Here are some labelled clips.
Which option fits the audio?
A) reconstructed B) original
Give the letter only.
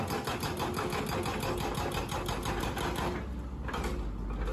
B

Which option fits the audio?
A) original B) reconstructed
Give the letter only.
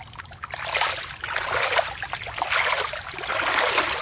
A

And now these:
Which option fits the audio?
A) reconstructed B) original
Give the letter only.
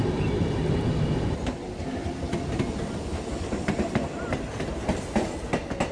B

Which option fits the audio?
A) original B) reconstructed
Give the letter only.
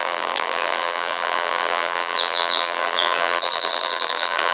B